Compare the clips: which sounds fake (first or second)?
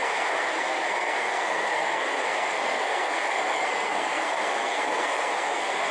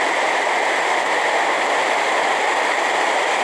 first